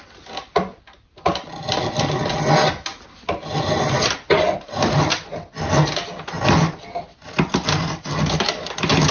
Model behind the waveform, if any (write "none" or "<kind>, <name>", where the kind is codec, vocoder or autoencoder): none